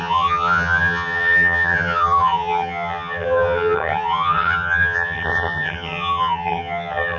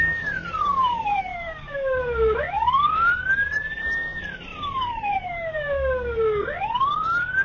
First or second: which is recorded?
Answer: second